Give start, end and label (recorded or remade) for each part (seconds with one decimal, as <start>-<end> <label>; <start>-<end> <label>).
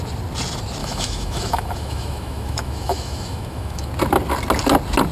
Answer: 0.0-0.8 recorded; 0.8-3.9 remade; 3.9-5.1 recorded